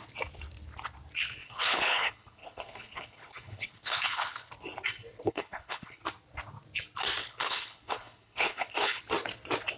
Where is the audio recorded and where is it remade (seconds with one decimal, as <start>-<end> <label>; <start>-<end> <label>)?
0.0-1.4 recorded; 1.4-4.5 remade; 4.5-5.2 recorded; 5.2-6.0 remade; 6.0-7.2 recorded; 7.2-9.0 remade; 9.0-9.8 recorded